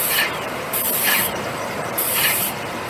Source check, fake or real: fake